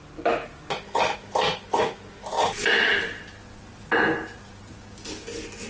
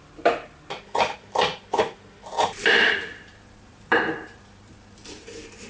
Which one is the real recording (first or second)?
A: first